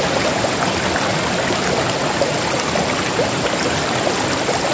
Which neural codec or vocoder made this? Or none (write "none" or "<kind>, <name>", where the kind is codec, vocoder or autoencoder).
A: none